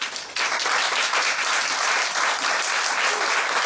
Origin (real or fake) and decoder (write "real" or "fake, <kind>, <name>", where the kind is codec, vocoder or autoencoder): real